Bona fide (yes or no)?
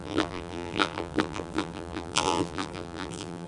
no